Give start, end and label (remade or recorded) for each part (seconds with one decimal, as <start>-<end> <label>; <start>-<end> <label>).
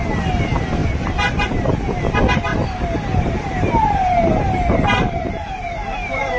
0.0-0.8 recorded; 0.8-2.0 remade; 2.0-2.5 recorded; 2.5-6.4 remade